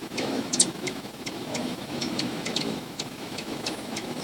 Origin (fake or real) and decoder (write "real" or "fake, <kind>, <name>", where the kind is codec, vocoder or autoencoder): fake, autoencoder, DAC-VAE